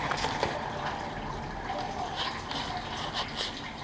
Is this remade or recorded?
recorded